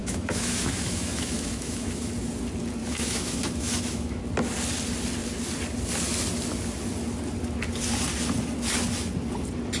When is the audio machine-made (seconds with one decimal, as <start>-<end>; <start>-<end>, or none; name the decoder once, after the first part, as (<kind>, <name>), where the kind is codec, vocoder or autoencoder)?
0.0-2.1 (autoencoder, DAC-VAE); 2.8-4.2